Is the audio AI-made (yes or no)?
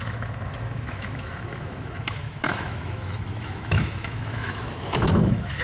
yes